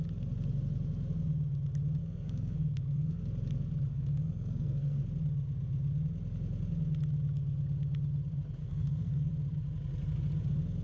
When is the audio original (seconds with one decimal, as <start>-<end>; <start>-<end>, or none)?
0.0-2.0; 3.2-3.9; 5.0-8.6; 9.3-10.8